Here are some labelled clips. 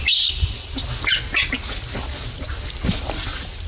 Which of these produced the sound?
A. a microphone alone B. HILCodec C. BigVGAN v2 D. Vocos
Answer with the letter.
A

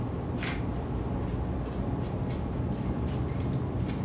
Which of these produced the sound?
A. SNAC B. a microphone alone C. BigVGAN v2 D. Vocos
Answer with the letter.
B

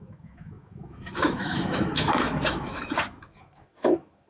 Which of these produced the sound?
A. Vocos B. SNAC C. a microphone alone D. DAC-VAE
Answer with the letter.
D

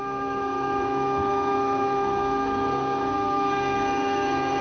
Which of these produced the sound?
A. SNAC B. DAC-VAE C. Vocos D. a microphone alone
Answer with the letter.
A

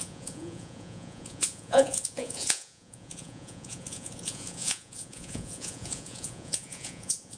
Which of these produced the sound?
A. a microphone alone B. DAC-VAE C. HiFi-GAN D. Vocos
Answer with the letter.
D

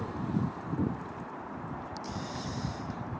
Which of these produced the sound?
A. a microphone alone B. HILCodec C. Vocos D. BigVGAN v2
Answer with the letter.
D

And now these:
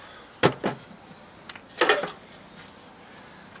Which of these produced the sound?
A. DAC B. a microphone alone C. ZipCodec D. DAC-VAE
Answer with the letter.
B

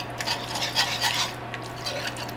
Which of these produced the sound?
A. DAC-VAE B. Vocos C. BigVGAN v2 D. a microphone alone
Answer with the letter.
D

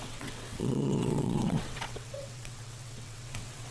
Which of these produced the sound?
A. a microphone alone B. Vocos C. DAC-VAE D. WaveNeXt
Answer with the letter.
D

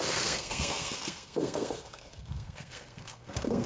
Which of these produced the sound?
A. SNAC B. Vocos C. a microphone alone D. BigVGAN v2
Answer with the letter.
A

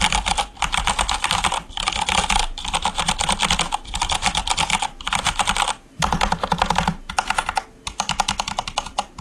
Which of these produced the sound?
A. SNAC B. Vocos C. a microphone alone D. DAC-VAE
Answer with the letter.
C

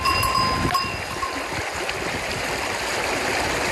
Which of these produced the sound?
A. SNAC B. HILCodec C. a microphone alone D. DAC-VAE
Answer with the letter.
C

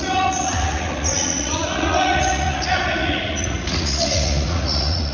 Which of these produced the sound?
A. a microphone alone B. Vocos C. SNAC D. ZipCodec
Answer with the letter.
B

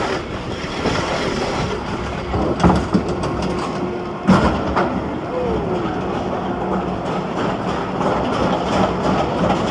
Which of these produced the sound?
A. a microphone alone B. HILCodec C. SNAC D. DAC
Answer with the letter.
A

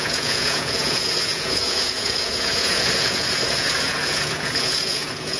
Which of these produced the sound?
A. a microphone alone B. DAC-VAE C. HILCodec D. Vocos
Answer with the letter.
D